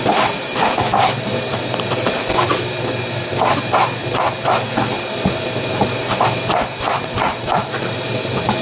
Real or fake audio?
fake